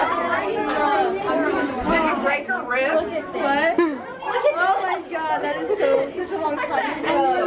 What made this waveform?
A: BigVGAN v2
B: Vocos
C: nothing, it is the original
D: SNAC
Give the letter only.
C